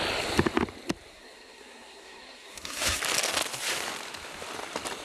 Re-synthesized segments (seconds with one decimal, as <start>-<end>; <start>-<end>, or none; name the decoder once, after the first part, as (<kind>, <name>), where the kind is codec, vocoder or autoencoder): 1.1-3.0 (codec, SNAC)